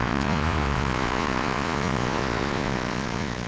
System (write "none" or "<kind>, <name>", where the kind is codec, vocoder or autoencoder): vocoder, Vocos